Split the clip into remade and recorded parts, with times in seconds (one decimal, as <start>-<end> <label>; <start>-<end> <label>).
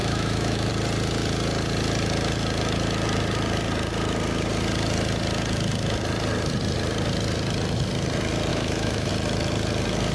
0.0-0.7 remade; 0.7-8.5 recorded; 8.5-9.1 remade; 9.1-10.1 recorded